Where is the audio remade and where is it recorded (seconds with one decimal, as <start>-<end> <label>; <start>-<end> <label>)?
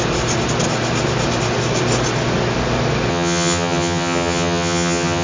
0.0-3.1 recorded; 3.1-5.2 remade